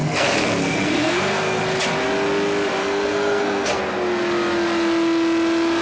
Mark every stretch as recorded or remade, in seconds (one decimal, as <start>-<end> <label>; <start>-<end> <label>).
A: 0.0-1.6 remade; 1.6-2.8 recorded; 2.8-3.8 remade; 3.8-5.8 recorded